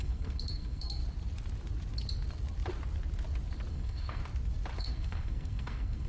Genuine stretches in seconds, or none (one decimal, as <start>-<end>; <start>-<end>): 1.0-3.7; 4.2-4.8